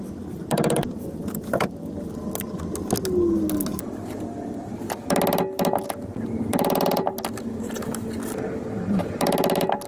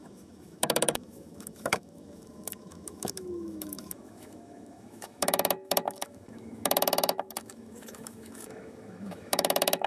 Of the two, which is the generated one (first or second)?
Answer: second